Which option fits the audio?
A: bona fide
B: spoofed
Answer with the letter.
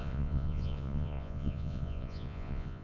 B